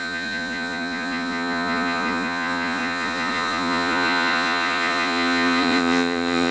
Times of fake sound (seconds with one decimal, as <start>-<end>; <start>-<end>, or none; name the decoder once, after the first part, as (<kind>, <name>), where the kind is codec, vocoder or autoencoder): 0.0-6.5 (vocoder, Vocos)